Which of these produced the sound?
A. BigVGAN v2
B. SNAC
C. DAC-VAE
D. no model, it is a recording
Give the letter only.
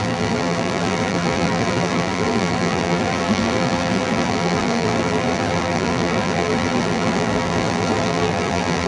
A